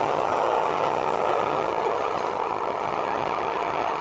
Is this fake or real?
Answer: fake